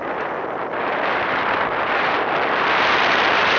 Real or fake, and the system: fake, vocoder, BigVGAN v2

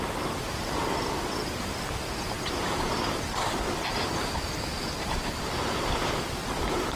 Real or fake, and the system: fake, vocoder, BigVGAN v2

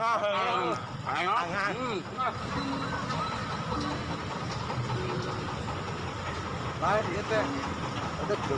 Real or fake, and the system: fake, vocoder, BigVGAN v2